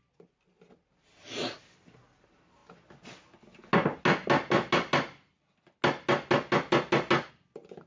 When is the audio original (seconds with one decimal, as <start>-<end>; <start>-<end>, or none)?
0.0-7.9